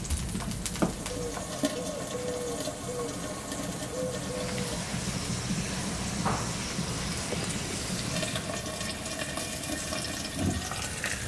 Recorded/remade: recorded